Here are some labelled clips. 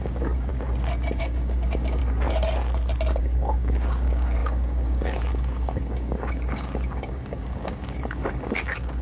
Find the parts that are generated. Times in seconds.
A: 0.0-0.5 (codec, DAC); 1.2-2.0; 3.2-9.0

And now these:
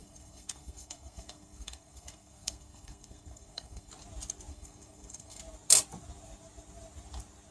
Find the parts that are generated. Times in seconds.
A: 0.0-3.9 (codec, SNAC); 4.5-5.4

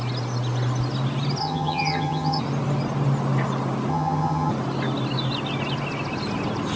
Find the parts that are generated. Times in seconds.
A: 1.4-2.4 (vocoder, HiFi-GAN); 3.9-4.5

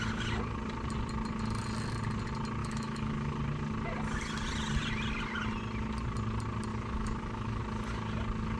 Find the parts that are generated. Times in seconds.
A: 2.6-3.4 (autoencoder, DAC-VAE); 6.7-7.6

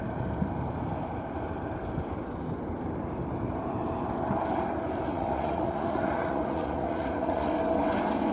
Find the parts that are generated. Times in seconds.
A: 5.1-7.5 (vocoder, Vocos)